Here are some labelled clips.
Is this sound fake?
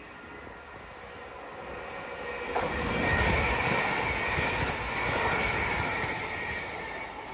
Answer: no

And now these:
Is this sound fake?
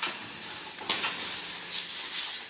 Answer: no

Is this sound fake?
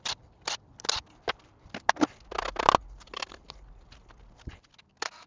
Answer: no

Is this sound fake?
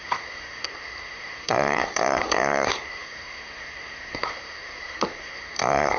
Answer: yes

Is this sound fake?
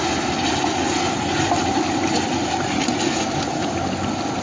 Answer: no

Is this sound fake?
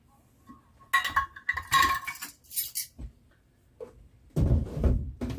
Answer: no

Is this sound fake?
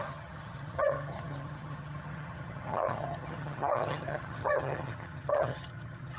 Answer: yes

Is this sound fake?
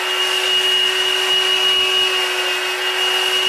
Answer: no